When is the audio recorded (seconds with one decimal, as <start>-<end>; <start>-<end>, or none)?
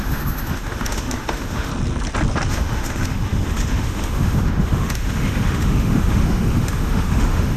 1.7-2.5